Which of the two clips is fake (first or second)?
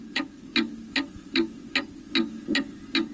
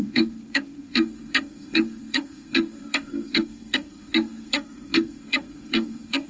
second